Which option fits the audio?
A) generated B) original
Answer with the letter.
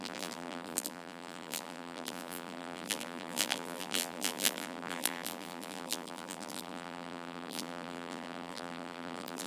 A